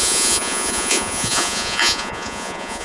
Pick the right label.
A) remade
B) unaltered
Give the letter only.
A